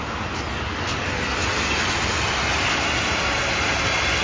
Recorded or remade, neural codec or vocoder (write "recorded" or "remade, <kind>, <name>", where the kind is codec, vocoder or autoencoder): recorded